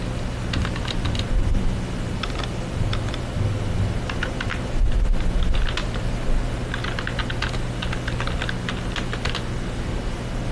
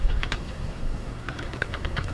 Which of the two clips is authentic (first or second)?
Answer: first